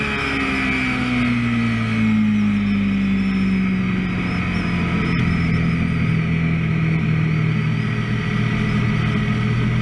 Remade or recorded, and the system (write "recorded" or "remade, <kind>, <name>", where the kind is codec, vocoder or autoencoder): recorded